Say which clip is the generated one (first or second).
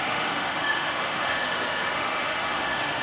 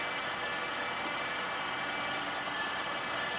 first